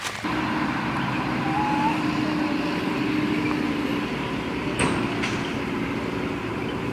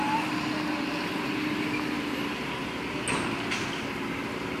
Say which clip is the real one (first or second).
second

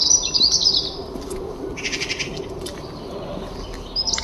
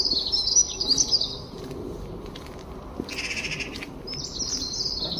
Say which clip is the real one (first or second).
second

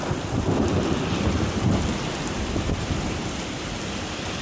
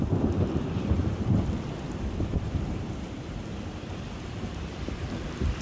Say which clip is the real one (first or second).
first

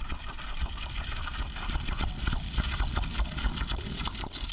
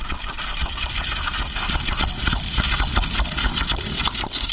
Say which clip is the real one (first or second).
second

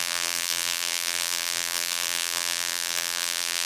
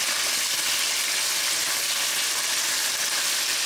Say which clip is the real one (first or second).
second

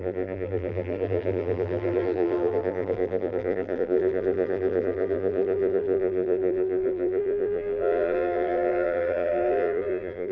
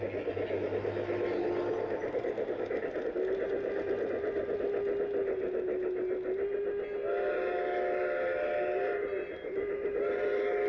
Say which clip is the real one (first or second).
second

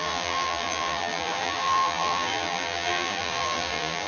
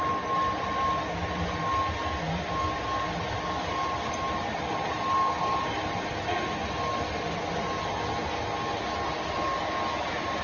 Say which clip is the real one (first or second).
second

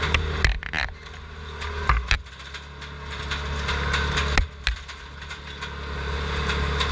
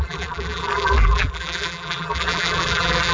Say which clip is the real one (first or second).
first